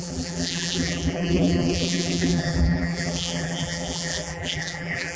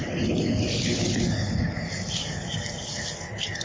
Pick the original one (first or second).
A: second